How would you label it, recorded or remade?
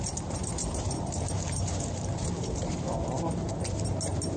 remade